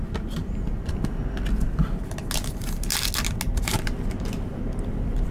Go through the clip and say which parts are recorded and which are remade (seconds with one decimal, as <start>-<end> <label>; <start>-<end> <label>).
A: 0.0-5.3 recorded